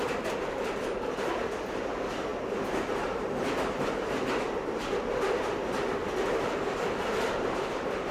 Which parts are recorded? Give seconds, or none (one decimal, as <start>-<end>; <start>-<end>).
0.0-8.1